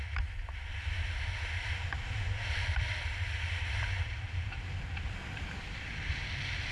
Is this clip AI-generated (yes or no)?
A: no